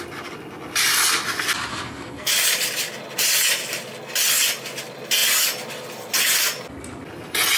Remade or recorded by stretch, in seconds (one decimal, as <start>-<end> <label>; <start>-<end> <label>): 0.0-1.7 recorded; 1.7-2.3 remade; 2.3-7.6 recorded